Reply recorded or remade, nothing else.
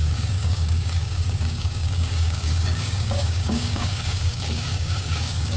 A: remade